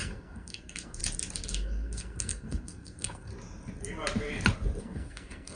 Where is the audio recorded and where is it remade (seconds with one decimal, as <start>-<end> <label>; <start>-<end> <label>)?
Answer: 0.0-1.0 remade; 1.0-1.5 recorded; 1.5-3.3 remade; 3.3-4.8 recorded; 4.8-5.6 remade